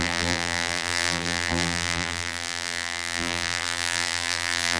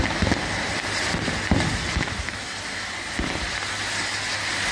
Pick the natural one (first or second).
second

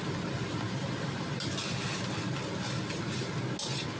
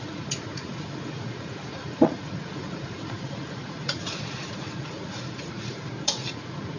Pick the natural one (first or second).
first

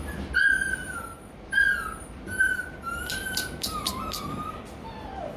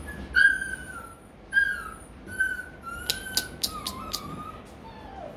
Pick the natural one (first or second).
second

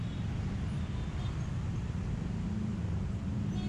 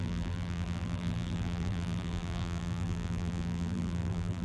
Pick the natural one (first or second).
first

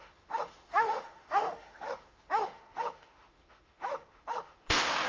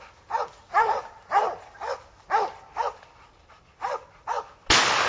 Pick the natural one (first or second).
second